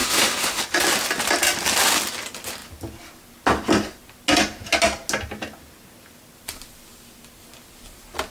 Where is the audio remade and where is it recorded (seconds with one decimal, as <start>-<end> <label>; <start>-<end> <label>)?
0.0-0.6 remade; 0.6-8.3 recorded